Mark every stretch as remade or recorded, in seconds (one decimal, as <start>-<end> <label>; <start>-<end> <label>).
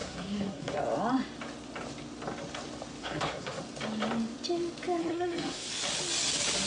0.0-0.8 remade; 0.8-3.0 recorded; 3.0-3.6 remade; 3.6-5.0 recorded; 5.0-5.7 remade; 5.7-6.7 recorded